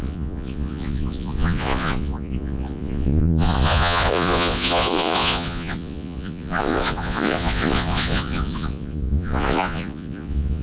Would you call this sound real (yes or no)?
no